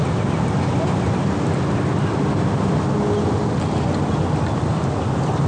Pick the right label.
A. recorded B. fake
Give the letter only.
A